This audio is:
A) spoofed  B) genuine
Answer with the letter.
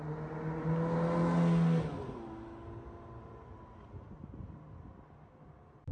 B